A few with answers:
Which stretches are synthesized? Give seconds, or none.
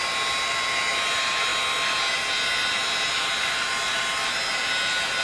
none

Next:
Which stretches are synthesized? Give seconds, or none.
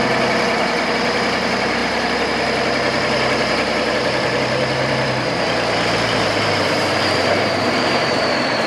0.0-8.7 (vocoder, BigVGAN v2)